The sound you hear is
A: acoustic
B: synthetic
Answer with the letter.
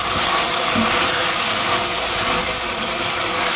A